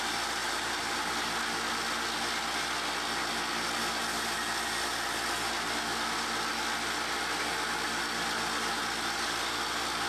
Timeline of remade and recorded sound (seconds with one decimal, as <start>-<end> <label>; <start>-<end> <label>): 0.0-0.4 recorded; 0.4-1.1 remade; 1.1-10.1 recorded